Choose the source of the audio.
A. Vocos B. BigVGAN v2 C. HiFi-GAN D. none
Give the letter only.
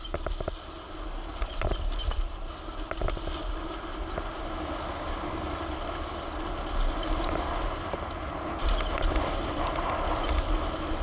D